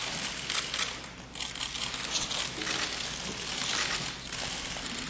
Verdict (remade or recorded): recorded